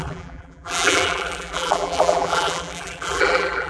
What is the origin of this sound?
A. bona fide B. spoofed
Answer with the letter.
B